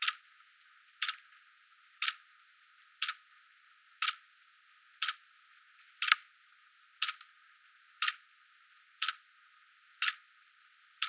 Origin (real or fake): real